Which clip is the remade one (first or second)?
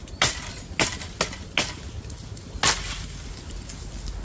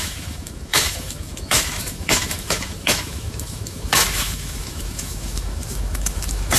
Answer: second